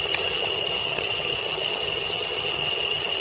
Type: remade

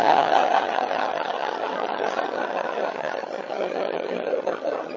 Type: remade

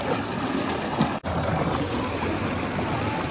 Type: recorded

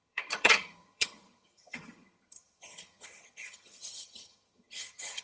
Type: remade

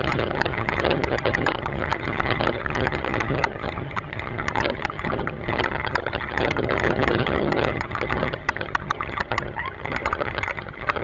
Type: remade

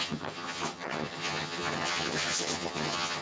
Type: remade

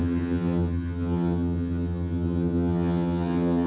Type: remade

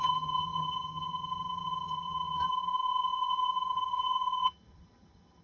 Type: remade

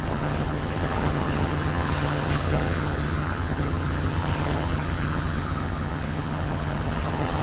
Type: remade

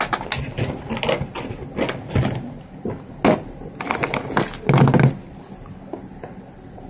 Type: recorded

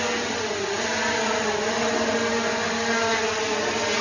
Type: recorded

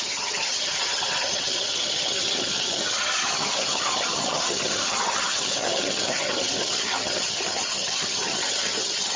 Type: remade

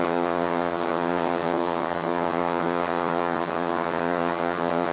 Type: remade